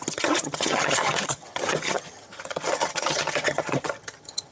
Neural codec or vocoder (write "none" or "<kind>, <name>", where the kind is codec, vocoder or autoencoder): vocoder, HiFi-GAN